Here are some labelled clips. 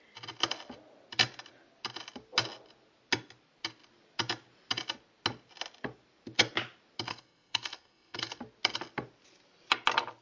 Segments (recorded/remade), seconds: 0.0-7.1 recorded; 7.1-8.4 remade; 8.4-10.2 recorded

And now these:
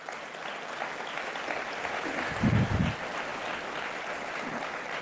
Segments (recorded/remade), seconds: 0.0-5.0 recorded

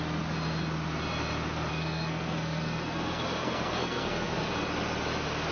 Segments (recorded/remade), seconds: 0.0-1.7 recorded; 1.7-4.5 remade; 4.5-5.5 recorded

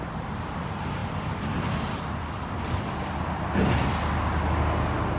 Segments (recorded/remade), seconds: 0.0-5.2 recorded

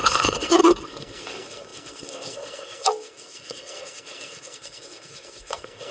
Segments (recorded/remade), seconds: 0.0-5.9 remade

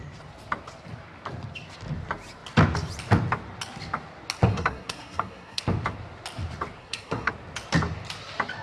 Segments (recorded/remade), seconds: 0.0-4.5 recorded; 4.5-5.6 remade; 5.6-6.8 recorded; 6.8-7.3 remade; 7.3-8.6 recorded

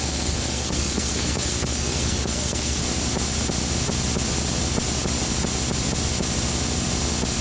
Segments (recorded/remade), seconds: 0.0-2.8 remade; 2.8-7.4 recorded

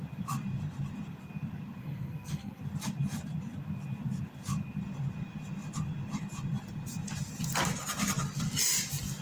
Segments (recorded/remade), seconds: 0.0-1.8 recorded; 1.8-2.6 remade; 2.6-9.2 recorded